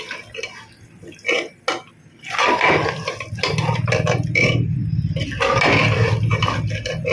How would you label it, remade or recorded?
recorded